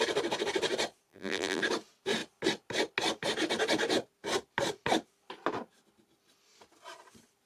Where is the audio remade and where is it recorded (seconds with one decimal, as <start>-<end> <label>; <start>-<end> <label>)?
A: 0.0-1.1 recorded; 1.1-1.6 remade; 1.6-7.5 recorded